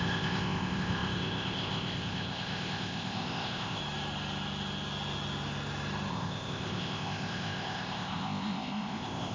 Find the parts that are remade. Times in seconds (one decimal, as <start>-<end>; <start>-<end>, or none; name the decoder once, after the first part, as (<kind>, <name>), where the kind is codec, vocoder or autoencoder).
0.0-3.8 (codec, ZipCodec); 6.1-9.3